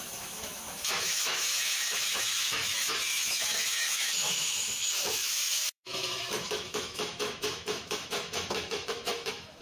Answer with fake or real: fake